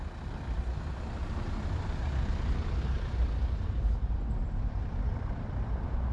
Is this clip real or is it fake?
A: real